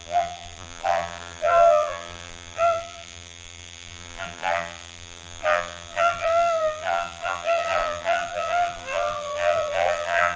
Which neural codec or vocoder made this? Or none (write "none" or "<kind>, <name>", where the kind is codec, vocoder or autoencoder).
vocoder, BigVGAN v2